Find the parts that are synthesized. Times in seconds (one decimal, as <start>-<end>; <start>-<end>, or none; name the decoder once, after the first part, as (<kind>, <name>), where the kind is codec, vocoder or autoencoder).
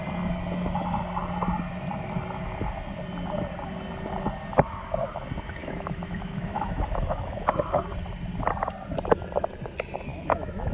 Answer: 5.6-7.6 (autoencoder, DAC-VAE); 10.1-10.7